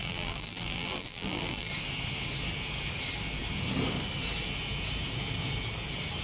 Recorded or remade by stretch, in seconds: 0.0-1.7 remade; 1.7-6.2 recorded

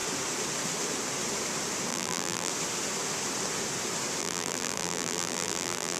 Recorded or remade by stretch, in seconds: 0.0-1.9 recorded; 1.9-2.5 remade; 2.5-4.2 recorded; 4.2-6.0 remade

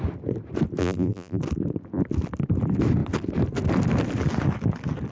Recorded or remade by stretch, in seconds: 0.0-0.8 recorded; 0.8-1.4 remade; 1.4-5.1 recorded

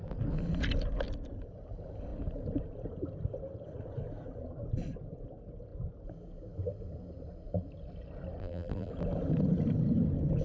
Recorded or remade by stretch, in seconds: 0.0-8.4 recorded; 8.4-8.9 remade; 8.9-10.4 recorded

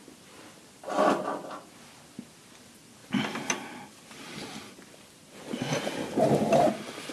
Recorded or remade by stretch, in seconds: 0.0-7.1 recorded

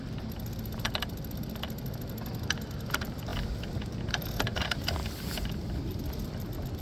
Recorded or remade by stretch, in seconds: 0.0-5.0 recorded; 5.0-6.8 remade